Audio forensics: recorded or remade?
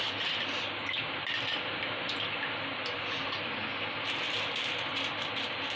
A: recorded